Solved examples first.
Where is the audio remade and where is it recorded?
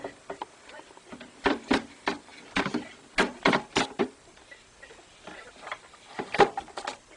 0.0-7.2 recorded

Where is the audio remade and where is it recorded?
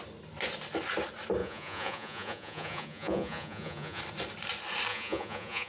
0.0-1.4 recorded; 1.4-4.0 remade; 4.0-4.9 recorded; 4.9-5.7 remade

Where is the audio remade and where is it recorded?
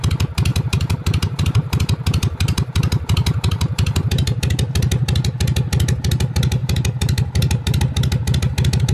0.0-0.5 recorded; 0.5-4.4 remade; 4.4-6.6 recorded; 6.6-7.8 remade; 7.8-8.9 recorded